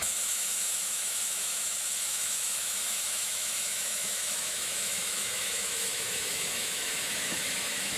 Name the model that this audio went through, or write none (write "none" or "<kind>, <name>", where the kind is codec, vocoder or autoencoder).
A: autoencoder, DAC-VAE